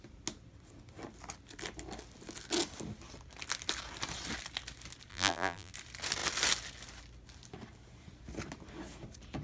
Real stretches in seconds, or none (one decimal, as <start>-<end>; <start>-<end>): 0.0-5.1; 5.7-9.4